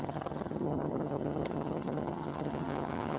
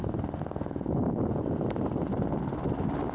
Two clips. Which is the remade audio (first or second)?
first